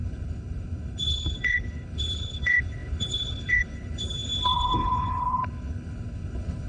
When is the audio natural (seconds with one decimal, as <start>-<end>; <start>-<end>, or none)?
none